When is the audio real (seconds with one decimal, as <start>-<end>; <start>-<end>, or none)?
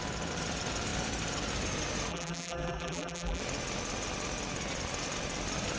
0.0-2.1; 3.4-5.8